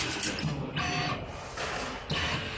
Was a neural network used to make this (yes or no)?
no